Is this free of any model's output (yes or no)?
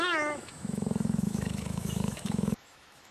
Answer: no